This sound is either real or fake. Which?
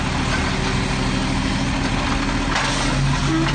real